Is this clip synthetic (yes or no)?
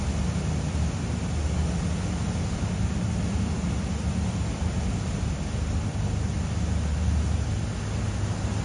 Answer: no